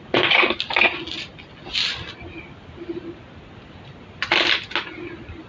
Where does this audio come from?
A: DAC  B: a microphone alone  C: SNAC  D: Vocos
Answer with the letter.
B